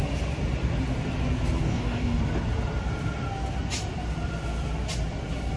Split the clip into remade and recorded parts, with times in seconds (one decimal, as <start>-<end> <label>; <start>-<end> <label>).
0.0-1.6 recorded; 1.6-2.2 remade; 2.2-5.6 recorded